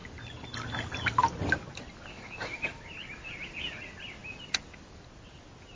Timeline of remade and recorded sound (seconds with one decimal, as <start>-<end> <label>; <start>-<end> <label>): 0.0-5.8 recorded